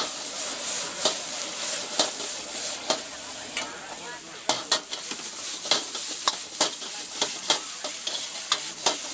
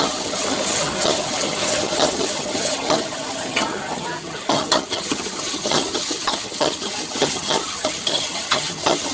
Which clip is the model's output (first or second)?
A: second